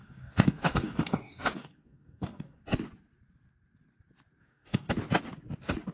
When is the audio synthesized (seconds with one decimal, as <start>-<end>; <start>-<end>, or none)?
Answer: 0.0-2.6; 4.4-4.9